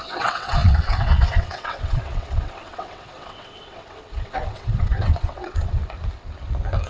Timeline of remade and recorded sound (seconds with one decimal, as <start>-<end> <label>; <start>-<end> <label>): 0.0-5.8 remade; 5.8-6.9 recorded